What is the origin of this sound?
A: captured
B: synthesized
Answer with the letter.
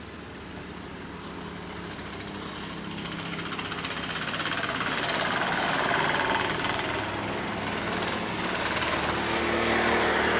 A